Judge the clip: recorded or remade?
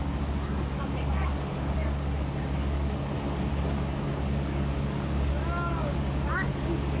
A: remade